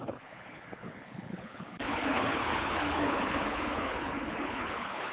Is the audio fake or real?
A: fake